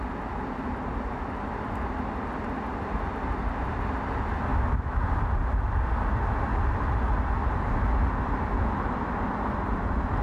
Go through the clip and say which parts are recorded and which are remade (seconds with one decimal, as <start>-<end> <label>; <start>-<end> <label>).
0.0-4.5 recorded; 4.5-5.0 remade; 5.0-10.2 recorded